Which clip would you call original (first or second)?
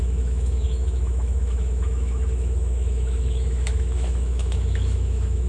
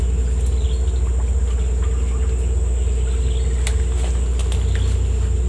second